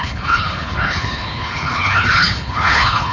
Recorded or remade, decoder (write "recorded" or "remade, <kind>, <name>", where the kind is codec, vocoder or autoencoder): remade, codec, HILCodec